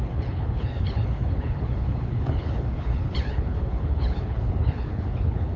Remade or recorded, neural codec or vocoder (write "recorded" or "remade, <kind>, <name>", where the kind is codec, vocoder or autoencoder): remade, codec, HILCodec